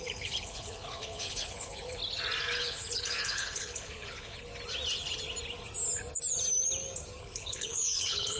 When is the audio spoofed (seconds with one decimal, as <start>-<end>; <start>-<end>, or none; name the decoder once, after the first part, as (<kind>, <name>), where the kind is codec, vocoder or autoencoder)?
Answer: 0.0-2.0 (codec, HILCodec); 2.6-4.5; 7.2-8.4